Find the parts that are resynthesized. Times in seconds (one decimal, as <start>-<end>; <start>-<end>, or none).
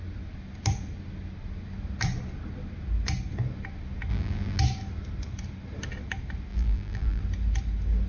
4.1-4.6; 6.5-7.2